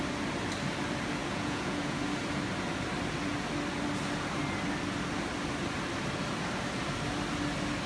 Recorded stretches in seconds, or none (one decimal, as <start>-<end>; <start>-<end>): 0.0-1.2; 2.0-7.9